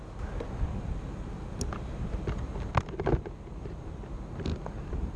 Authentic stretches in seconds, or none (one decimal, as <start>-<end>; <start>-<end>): 0.0-4.5